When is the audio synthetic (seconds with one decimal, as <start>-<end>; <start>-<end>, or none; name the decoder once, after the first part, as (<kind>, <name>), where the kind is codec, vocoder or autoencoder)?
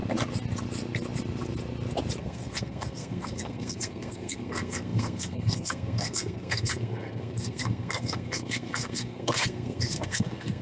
2.2-10.6 (codec, SNAC)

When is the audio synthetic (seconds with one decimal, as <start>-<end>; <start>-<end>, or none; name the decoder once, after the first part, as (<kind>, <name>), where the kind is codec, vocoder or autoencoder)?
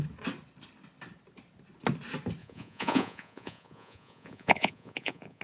2.4-5.4 (vocoder, Vocos)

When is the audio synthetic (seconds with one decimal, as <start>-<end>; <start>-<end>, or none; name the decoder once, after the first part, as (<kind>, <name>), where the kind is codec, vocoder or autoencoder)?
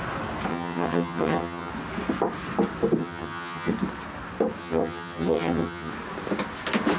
0.5-1.7 (vocoder, HiFi-GAN); 3.0-3.7; 4.6-5.9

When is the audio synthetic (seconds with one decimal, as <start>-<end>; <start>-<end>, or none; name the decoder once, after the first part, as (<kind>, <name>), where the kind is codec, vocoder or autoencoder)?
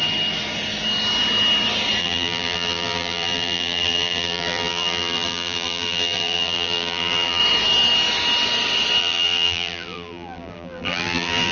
2.0-7.4 (vocoder, BigVGAN v2); 9.0-11.5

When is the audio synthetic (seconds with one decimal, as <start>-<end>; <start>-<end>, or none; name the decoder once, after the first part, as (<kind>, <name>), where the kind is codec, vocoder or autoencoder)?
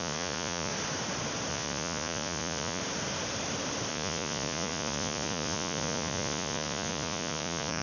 0.0-0.7 (vocoder, Vocos); 1.5-2.8; 3.9-7.8